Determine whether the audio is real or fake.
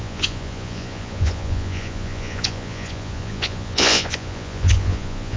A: fake